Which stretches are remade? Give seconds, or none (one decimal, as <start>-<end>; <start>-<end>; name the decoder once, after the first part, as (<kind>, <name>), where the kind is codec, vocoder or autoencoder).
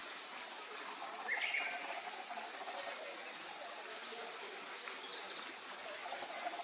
none